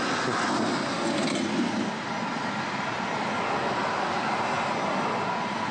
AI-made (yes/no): no